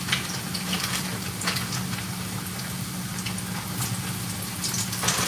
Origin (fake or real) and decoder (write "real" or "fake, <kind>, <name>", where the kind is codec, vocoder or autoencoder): real